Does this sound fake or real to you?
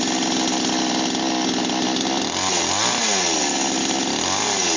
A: real